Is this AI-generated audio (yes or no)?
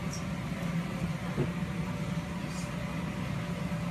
no